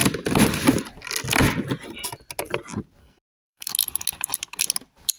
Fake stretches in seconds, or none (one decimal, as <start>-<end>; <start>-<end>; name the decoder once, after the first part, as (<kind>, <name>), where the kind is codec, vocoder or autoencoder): 3.0-3.7 (codec, SNAC)